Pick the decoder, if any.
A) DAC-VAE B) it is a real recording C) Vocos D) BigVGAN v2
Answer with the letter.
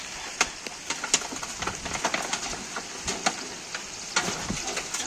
B